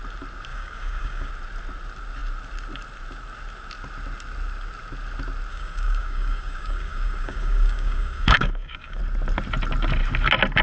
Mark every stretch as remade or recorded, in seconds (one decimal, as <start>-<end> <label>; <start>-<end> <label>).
0.0-0.5 recorded; 0.5-1.3 remade; 1.3-5.5 recorded; 5.5-9.0 remade; 9.0-10.6 recorded